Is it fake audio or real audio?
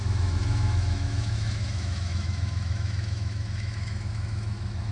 fake